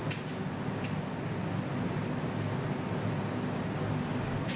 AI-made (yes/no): no